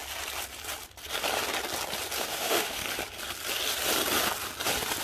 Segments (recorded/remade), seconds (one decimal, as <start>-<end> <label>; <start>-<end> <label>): 0.0-2.2 recorded; 2.2-2.8 remade; 2.8-5.0 recorded